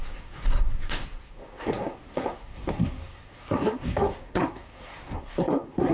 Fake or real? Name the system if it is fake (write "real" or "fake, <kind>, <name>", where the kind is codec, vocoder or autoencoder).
fake, codec, SNAC